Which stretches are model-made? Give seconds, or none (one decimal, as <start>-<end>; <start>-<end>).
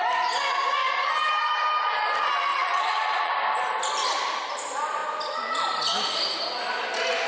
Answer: 2.5-3.3